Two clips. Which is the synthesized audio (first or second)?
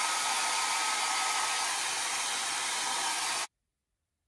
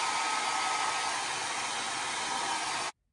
first